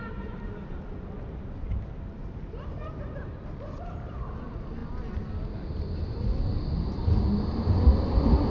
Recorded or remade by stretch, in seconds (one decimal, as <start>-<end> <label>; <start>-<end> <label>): 0.0-8.5 recorded